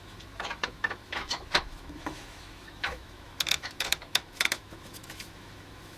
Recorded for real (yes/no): no